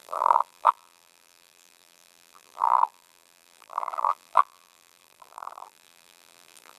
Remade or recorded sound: remade